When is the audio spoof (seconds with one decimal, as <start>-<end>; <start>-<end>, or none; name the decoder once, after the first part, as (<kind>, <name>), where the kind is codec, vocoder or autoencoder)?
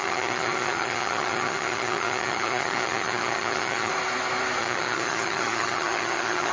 0.0-3.9 (vocoder, HiFi-GAN); 4.6-6.5